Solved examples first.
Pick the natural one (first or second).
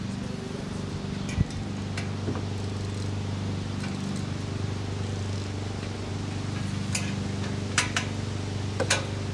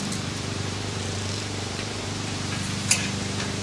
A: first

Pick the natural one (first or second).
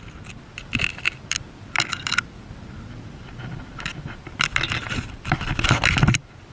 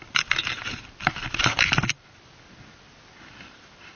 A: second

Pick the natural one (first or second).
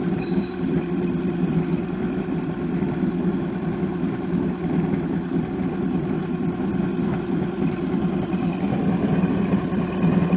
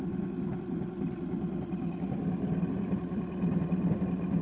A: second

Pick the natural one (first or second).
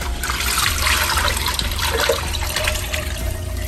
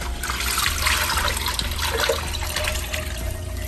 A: second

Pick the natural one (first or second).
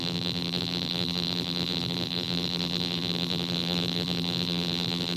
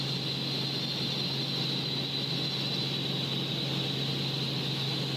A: second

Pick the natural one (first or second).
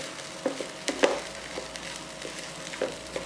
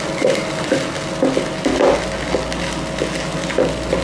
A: second